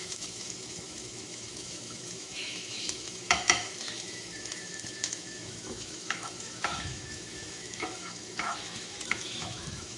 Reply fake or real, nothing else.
fake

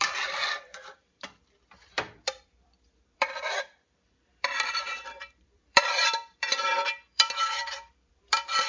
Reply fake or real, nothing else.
fake